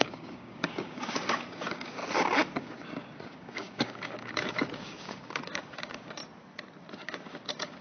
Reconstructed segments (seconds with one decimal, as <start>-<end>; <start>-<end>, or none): 0.0-2.0; 2.6-6.2; 6.9-7.8